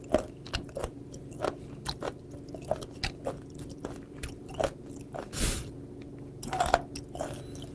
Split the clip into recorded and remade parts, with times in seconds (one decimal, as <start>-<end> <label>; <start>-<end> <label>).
0.0-0.8 recorded; 0.8-5.4 remade; 5.4-7.7 recorded